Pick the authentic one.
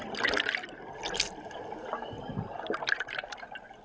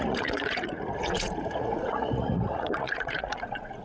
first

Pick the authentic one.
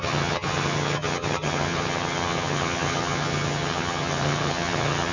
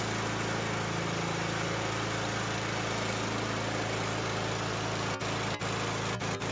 second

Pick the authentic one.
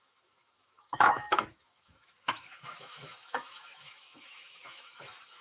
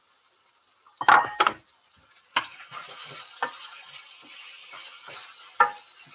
second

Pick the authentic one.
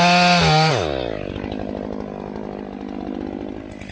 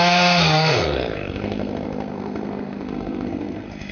first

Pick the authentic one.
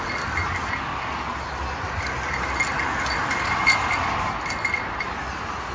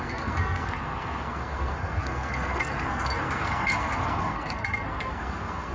first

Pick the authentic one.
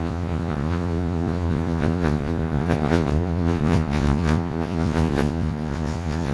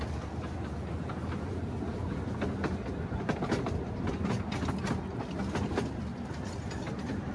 second